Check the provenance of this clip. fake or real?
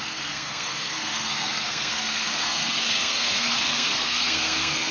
fake